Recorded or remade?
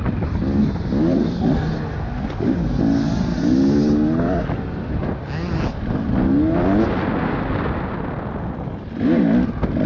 recorded